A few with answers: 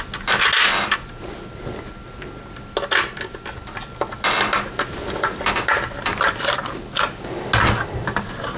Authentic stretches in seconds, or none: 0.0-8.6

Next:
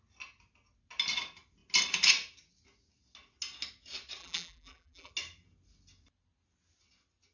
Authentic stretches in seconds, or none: 0.0-4.2; 5.1-7.3

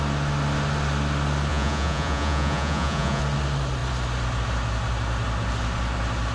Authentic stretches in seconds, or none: 0.0-1.5; 3.2-6.3

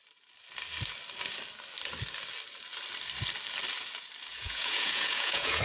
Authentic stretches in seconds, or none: 0.0-4.3

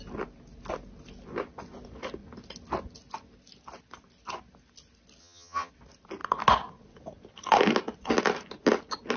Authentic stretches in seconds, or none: 0.0-5.2; 5.7-9.2

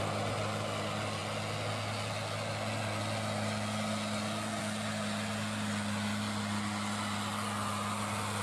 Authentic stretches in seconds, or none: 0.0-8.4